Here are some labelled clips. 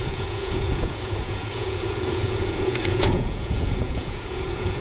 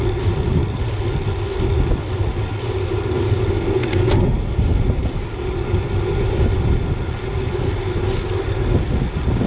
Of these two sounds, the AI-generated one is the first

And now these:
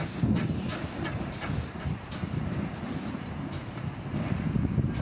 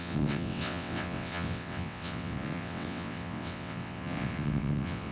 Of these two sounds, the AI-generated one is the second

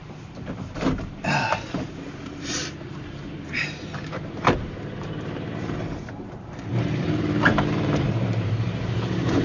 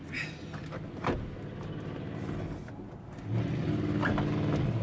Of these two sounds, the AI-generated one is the first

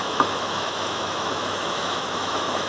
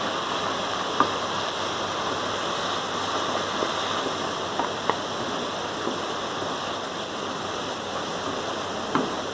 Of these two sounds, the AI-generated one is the first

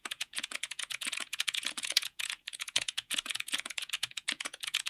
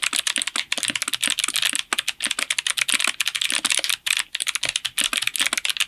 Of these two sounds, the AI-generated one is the first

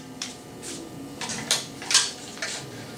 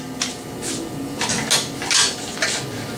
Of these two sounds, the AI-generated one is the first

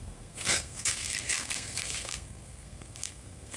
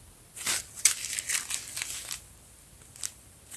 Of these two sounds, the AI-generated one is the first